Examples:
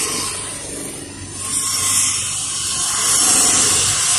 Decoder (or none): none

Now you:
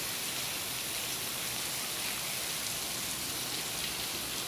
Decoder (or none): none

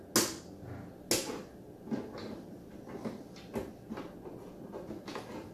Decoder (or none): none